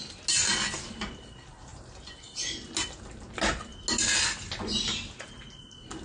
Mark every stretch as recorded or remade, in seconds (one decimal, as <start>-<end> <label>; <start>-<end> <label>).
0.0-6.0 recorded